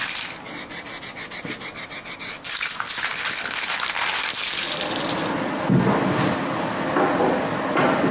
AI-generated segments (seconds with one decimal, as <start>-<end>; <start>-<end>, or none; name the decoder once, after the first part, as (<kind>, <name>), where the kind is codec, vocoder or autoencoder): none